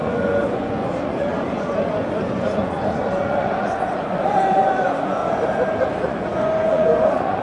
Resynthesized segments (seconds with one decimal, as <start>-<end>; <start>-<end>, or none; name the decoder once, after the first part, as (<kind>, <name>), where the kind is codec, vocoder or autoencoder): 0.0-5.2 (vocoder, Vocos); 5.8-7.4